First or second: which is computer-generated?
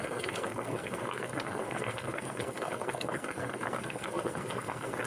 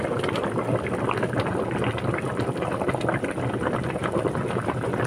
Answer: first